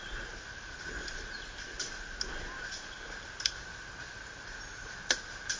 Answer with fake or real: real